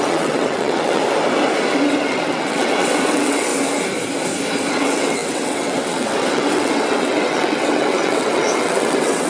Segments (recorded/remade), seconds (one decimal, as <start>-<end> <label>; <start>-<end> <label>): 0.0-1.0 remade; 1.0-1.7 recorded; 1.7-3.5 remade; 3.5-4.7 recorded; 4.7-9.3 remade